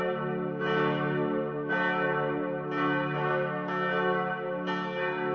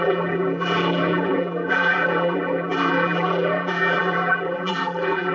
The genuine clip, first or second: first